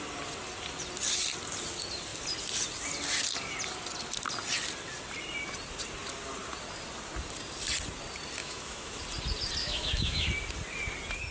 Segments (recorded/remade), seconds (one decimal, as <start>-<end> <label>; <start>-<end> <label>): 0.0-8.4 recorded; 8.4-9.0 remade; 9.0-9.6 recorded; 9.6-10.3 remade; 10.3-11.3 recorded